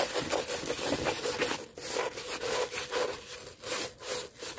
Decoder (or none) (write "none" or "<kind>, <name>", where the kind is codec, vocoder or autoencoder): none